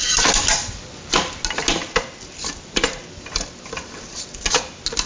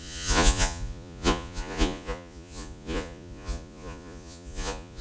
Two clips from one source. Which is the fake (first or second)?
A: second